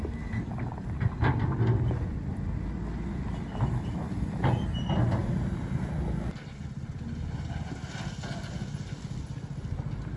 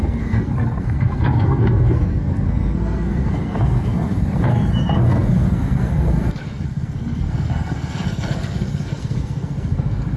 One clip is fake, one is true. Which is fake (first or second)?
second